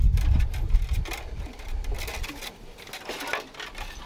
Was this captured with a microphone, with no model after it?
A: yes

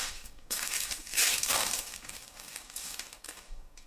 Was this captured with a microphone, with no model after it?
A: no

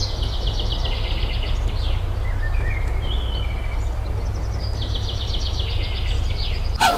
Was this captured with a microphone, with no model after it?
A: yes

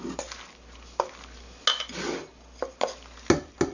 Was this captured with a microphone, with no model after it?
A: yes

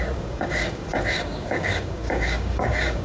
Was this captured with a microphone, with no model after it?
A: no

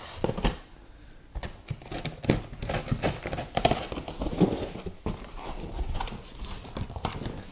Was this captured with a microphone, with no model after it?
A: yes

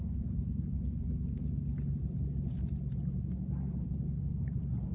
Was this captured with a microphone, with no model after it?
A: yes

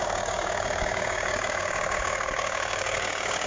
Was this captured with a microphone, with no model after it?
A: no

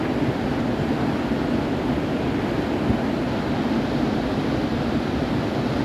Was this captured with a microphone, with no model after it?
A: yes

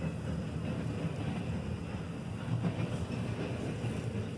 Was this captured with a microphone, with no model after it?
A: yes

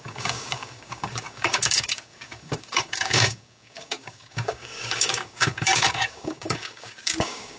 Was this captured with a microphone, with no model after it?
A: no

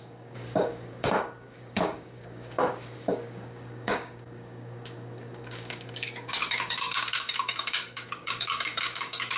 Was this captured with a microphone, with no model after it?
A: no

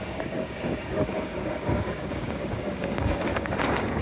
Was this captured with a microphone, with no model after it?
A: no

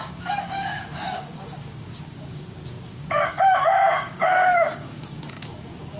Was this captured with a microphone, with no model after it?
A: no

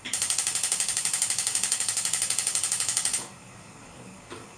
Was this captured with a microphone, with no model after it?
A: no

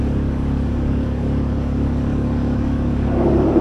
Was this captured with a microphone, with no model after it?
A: no